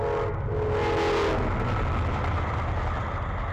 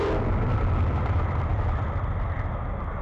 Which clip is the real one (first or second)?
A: first